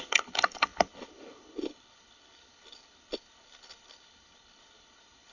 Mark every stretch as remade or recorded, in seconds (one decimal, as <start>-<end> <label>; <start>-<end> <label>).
0.0-5.3 remade